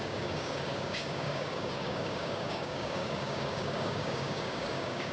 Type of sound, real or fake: fake